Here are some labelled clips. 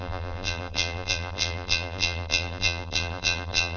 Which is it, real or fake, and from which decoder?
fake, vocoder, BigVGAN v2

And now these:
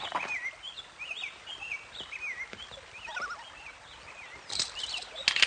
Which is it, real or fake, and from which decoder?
real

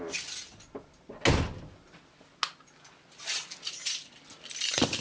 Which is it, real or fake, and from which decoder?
real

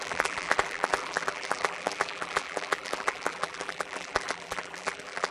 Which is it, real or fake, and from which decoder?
fake, vocoder, BigVGAN v2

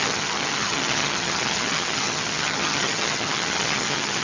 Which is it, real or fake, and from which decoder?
fake, vocoder, HiFi-GAN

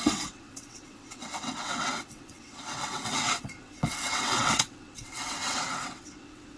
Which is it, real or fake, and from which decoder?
fake, vocoder, WaveNeXt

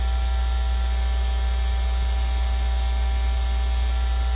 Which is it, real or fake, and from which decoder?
real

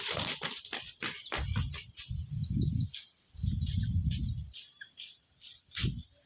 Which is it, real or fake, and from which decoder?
real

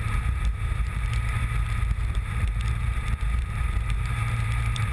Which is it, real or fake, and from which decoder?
fake, vocoder, BigVGAN v2